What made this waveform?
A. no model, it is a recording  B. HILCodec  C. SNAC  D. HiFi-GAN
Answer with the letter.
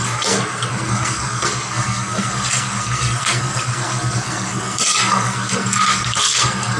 C